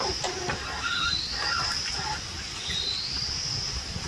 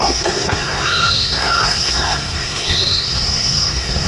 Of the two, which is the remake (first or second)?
second